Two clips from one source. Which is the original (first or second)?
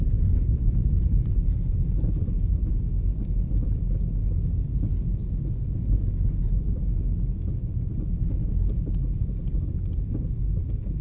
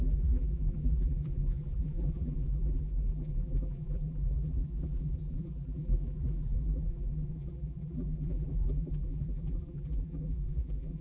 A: first